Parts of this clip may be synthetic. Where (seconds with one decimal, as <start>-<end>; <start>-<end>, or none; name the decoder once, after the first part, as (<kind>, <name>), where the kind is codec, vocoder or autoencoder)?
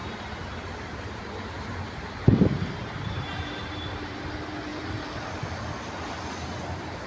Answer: 0.0-4.3 (vocoder, BigVGAN v2); 4.7-5.2